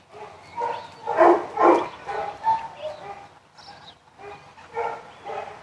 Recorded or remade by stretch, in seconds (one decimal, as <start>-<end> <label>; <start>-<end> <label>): 0.0-2.2 recorded; 2.2-3.2 remade; 3.2-5.6 recorded